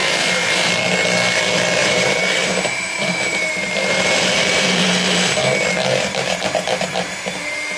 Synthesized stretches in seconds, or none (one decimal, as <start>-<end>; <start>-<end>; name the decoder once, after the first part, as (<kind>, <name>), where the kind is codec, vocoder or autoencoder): 0.0-0.7 (vocoder, BigVGAN v2); 1.8-5.5